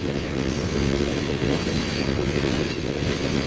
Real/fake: fake